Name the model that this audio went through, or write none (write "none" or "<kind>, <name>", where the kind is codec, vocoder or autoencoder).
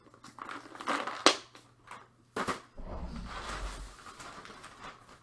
none